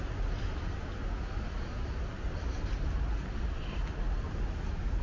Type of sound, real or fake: real